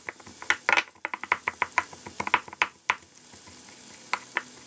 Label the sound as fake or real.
real